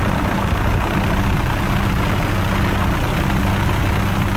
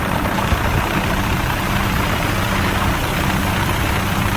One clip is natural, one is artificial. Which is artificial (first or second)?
second